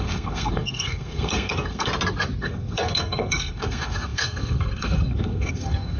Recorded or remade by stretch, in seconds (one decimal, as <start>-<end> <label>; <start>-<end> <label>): 0.0-1.9 remade; 1.9-2.4 recorded; 2.4-6.0 remade